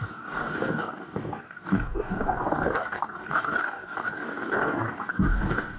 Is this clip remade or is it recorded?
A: remade